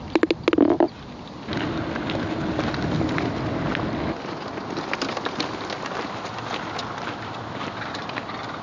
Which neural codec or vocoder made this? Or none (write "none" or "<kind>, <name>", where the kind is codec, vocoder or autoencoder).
none